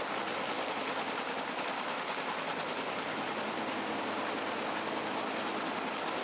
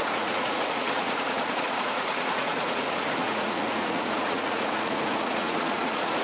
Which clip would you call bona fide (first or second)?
first